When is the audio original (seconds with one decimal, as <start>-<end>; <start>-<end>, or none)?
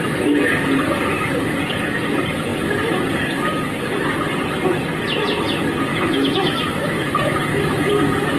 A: 0.0-5.9; 7.8-8.4